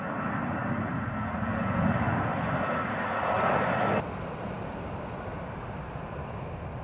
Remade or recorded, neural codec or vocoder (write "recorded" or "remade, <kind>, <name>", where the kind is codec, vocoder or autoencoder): recorded